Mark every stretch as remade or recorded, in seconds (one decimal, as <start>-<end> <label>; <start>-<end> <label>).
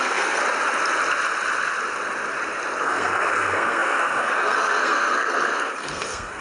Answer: 0.0-0.4 remade; 0.4-2.8 recorded; 2.8-6.4 remade